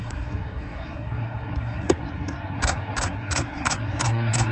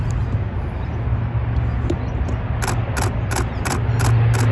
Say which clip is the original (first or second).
second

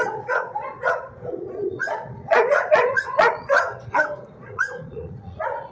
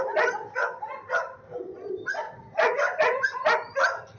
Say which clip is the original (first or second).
second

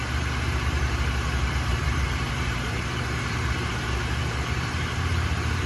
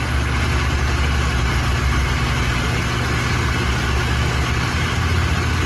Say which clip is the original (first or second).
second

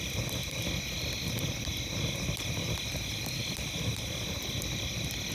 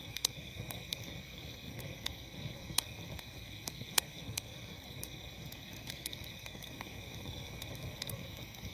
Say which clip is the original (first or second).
first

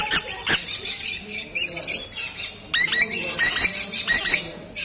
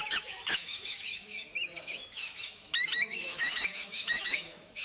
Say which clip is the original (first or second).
first